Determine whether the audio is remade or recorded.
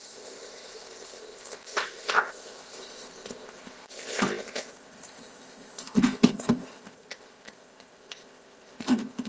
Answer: remade